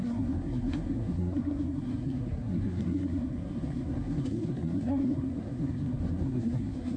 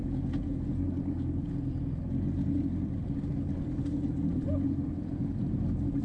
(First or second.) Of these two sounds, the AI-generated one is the first